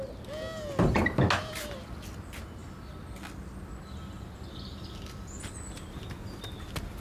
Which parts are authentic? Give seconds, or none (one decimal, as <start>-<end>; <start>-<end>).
0.0-7.0